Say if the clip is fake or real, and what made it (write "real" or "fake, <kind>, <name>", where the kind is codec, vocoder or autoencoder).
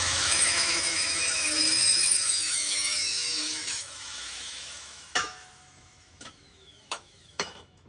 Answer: fake, autoencoder, DAC-VAE